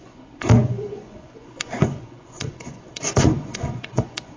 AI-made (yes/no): yes